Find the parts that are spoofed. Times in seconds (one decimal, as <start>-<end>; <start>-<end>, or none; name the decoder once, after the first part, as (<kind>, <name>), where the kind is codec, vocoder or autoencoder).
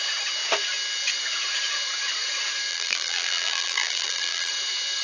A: 2.7-4.5 (vocoder, BigVGAN v2)